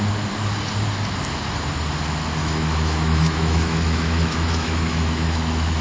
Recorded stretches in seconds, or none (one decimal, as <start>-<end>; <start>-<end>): 0.0-2.4